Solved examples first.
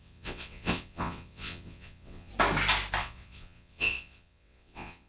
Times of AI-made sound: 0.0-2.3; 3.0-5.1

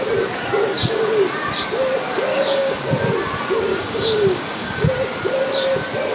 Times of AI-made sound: 2.3-2.8; 3.7-4.9

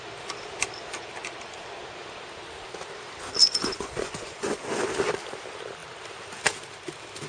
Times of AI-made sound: 3.4-4.8

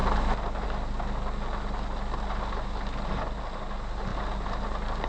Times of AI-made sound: none

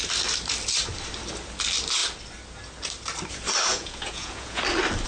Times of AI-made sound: 3.7-4.6

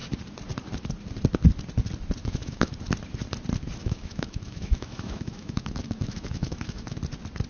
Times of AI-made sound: 2.2-2.7; 3.8-7.0

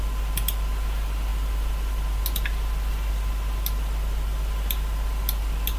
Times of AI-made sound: none

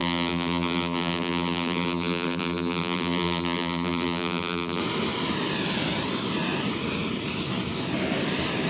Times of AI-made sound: 0.0-4.8